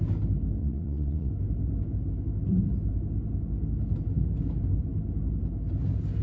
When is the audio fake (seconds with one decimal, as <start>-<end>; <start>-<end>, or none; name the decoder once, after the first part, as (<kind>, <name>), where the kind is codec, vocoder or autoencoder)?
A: 0.6-1.3 (vocoder, Vocos)